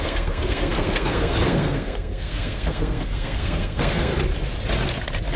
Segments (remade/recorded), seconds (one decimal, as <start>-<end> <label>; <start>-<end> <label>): 0.0-4.1 remade; 4.1-5.4 recorded